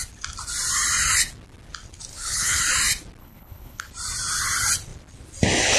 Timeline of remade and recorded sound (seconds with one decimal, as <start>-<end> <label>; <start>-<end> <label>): 0.0-2.1 recorded; 2.1-2.6 remade; 2.6-3.2 recorded; 3.2-3.9 remade; 3.9-5.8 recorded